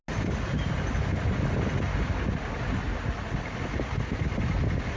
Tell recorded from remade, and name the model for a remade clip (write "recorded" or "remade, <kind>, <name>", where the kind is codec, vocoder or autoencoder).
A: recorded